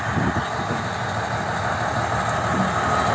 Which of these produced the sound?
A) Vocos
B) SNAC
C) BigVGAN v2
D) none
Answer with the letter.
D